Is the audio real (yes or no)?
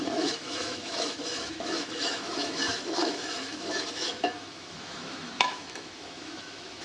no